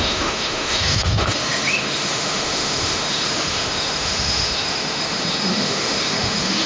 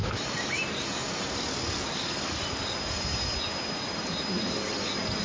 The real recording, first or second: second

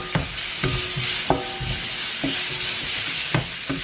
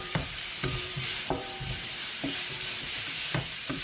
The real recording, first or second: first